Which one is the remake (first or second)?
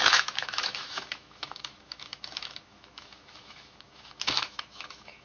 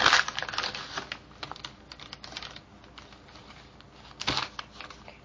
first